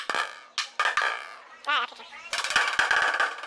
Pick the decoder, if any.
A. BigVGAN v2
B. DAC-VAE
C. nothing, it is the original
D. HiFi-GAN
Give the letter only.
C